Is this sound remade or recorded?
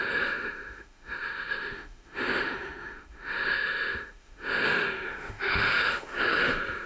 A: remade